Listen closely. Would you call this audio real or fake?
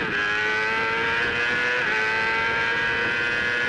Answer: real